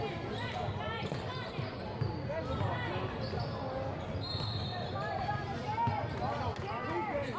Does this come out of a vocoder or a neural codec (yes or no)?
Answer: no